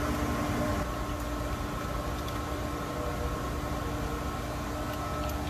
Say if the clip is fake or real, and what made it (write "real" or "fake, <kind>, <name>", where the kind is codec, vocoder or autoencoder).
real